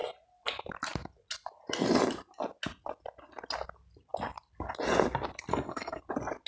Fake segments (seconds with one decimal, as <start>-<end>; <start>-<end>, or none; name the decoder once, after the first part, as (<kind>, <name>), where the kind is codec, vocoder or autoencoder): 5.5-6.0 (codec, SNAC)